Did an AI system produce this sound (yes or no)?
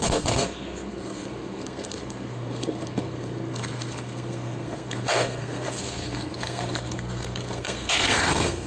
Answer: yes